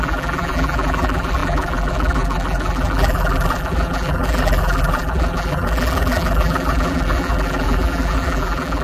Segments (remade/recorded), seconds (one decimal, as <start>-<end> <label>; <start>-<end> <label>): 0.0-8.8 remade

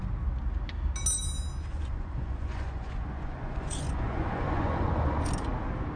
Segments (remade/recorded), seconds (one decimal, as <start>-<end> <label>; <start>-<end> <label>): 0.0-1.7 recorded; 1.7-5.3 remade; 5.3-6.0 recorded

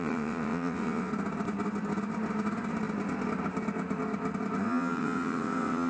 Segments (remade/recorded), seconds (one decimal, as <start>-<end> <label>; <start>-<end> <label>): 0.0-1.1 remade; 1.1-4.6 recorded; 4.6-5.9 remade

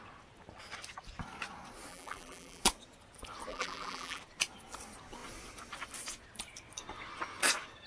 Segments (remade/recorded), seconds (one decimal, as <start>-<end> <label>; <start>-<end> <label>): 0.0-1.9 recorded; 1.9-2.6 remade; 2.6-3.5 recorded; 3.5-4.2 remade; 4.2-7.9 recorded

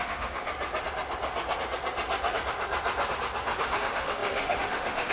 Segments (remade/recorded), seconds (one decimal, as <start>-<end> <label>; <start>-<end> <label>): 0.0-0.5 remade; 0.5-3.6 recorded; 3.6-5.1 remade

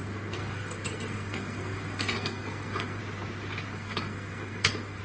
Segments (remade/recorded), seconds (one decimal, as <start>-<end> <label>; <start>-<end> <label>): 0.0-3.0 remade; 3.0-3.7 recorded; 3.7-5.0 remade